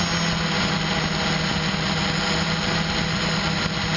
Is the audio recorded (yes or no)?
yes